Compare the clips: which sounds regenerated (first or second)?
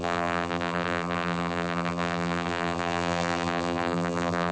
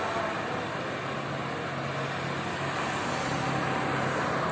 first